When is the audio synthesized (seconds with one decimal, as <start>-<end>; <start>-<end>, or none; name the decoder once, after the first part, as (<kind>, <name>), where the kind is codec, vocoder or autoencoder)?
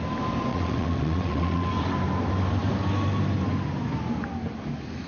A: 0.5-1.7 (vocoder, WaveNeXt)